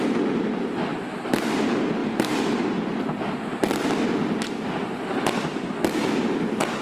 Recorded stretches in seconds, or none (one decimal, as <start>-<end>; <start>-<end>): 0.0-0.9; 1.6-2.0; 3.4-6.8